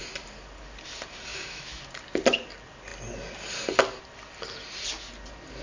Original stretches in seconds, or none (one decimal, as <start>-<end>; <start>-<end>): 0.0-1.3; 1.8-5.6